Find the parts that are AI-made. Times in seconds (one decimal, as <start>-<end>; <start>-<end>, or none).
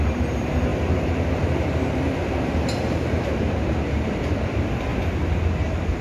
0.0-4.9